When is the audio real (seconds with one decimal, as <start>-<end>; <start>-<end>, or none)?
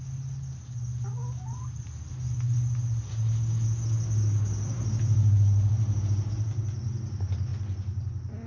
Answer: 0.0-8.5